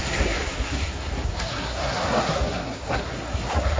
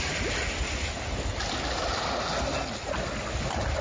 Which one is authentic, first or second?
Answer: second